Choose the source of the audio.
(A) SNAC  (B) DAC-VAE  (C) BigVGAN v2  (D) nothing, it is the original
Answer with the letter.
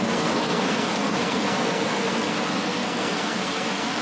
A